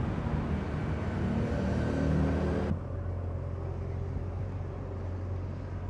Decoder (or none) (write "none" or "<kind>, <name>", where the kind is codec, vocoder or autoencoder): none